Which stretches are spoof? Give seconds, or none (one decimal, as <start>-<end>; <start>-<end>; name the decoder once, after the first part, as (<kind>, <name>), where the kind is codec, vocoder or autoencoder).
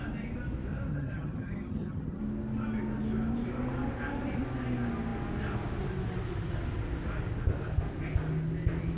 0.9-2.2 (vocoder, HiFi-GAN)